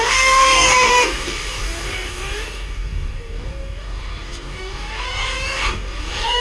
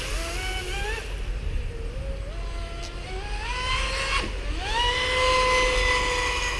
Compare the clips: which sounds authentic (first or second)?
second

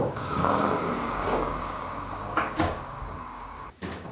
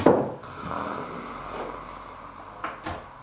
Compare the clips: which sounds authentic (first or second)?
second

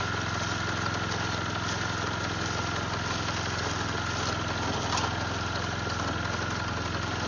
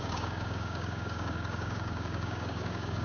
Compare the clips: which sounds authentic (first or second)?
first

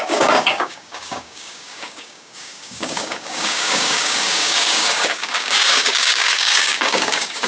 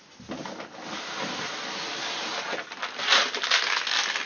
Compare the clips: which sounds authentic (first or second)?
second